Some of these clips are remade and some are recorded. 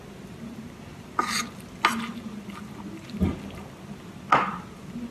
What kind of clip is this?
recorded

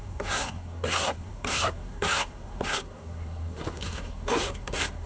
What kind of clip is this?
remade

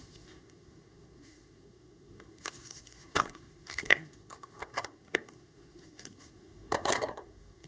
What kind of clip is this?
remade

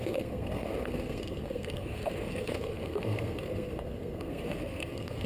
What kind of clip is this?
remade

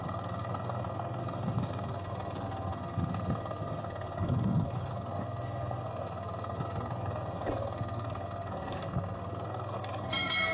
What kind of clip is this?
remade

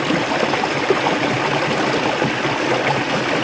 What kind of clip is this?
recorded